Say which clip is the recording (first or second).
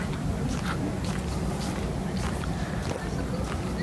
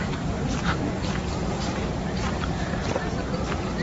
first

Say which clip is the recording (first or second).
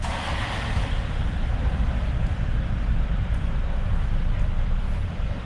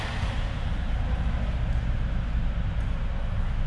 second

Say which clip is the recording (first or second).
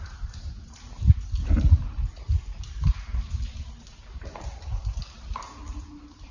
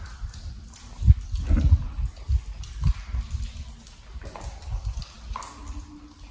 second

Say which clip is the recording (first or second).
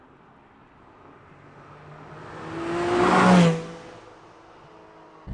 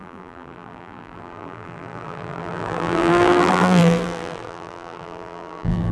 first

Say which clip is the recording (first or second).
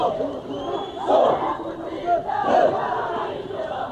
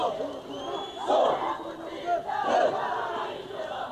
second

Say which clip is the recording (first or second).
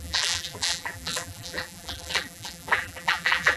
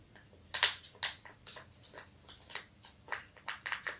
second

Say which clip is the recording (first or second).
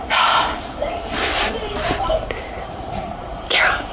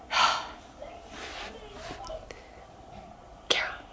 second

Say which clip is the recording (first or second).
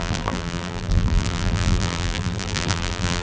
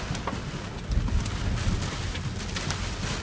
second